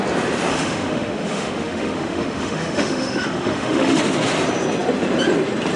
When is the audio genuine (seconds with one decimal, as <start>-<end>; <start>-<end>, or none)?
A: 0.0-0.5; 4.0-5.8